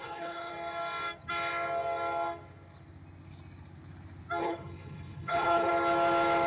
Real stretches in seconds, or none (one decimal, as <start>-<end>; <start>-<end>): 0.5-4.4; 5.7-6.5